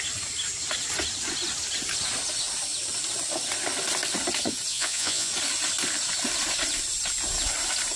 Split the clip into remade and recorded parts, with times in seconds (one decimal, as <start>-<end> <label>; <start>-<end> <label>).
0.0-4.7 recorded; 4.7-5.3 remade; 5.3-8.0 recorded